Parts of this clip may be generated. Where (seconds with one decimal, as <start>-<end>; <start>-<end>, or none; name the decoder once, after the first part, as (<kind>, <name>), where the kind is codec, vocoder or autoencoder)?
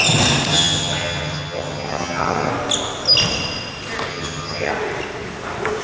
0.5-2.5 (vocoder, HiFi-GAN); 4.1-4.7